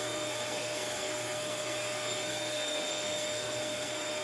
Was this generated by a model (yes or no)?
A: yes